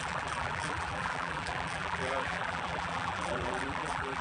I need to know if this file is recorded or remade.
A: remade